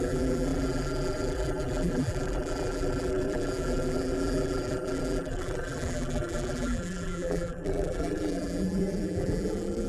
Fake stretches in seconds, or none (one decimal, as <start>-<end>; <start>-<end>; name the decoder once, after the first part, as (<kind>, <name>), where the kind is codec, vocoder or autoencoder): 0.0-9.9 (vocoder, BigVGAN v2)